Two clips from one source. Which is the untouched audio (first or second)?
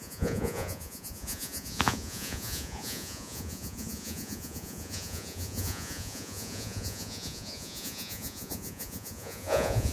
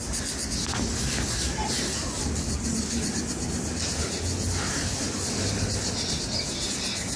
second